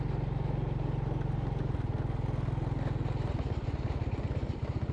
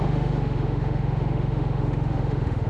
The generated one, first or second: second